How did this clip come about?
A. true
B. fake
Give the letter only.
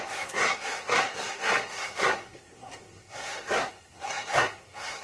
B